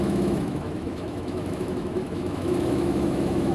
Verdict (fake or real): fake